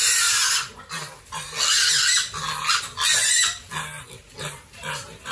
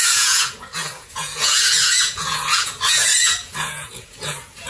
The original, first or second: first